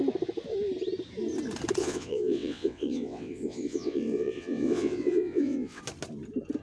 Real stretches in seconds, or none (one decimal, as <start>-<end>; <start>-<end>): 0.0-1.8; 5.8-6.6